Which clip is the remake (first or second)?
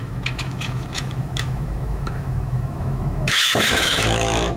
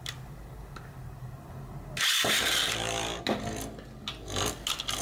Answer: first